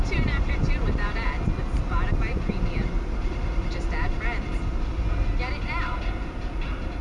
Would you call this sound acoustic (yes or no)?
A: yes